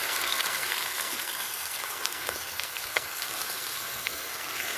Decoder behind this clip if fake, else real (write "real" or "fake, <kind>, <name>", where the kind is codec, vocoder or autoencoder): fake, codec, SNAC